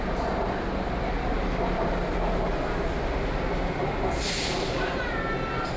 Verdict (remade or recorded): recorded